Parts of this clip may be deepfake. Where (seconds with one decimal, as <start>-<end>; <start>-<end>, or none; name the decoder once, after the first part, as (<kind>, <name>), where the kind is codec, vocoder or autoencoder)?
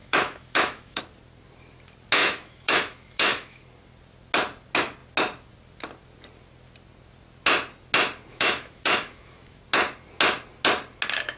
0.0-1.0 (autoencoder, DAC-VAE); 2.2-3.6; 8.3-9.6